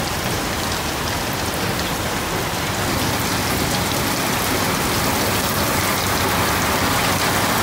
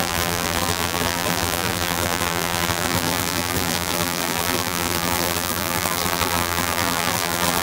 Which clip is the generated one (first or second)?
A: second